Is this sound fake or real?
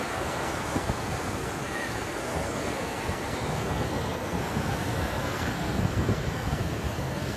fake